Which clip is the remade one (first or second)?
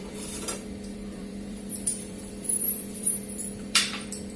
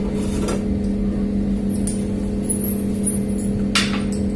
first